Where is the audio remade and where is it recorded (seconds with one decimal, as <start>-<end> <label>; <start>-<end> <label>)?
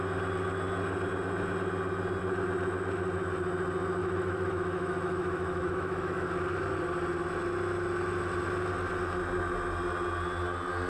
0.0-4.0 recorded; 4.0-6.3 remade; 6.3-10.9 recorded